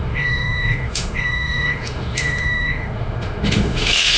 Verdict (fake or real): fake